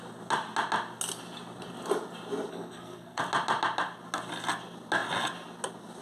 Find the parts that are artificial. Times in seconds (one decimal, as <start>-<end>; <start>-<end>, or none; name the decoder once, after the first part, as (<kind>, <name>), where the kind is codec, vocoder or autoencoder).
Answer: 2.5-3.2 (codec, SNAC)